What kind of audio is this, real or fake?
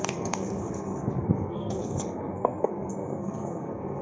fake